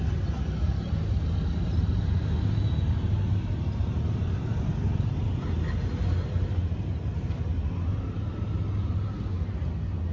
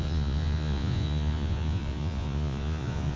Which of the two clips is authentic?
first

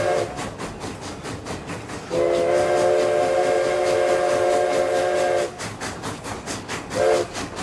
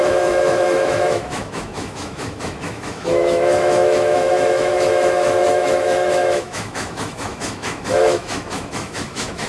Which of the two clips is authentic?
first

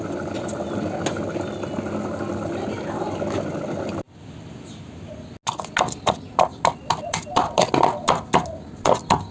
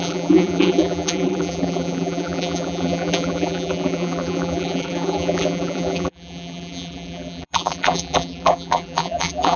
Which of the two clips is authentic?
first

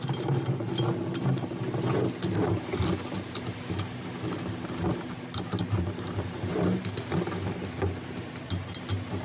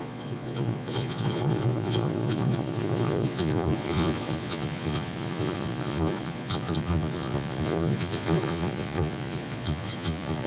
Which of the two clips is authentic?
first